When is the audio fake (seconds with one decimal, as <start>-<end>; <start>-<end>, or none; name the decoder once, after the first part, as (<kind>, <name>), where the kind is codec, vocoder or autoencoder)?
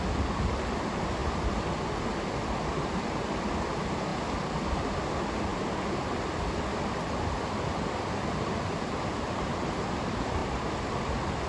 none